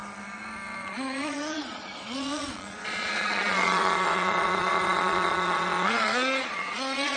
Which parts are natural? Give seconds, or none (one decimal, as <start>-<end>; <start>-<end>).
0.0-0.8